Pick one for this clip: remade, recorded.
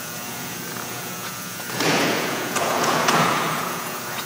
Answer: remade